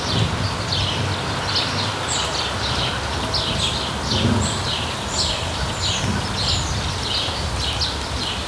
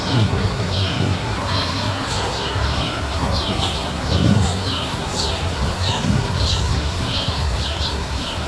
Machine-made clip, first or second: second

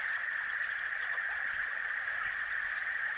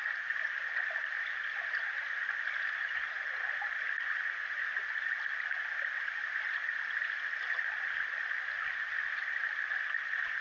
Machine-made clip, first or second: first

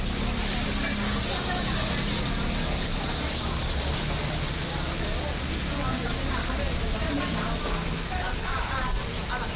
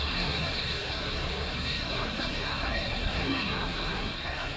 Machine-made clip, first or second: second